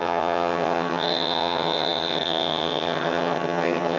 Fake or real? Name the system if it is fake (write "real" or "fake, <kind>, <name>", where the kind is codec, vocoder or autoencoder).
fake, vocoder, HiFi-GAN